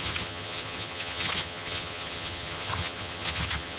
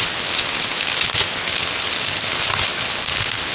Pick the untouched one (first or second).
second